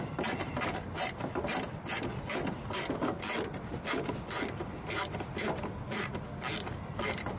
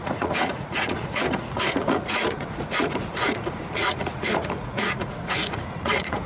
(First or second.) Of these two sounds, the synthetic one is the second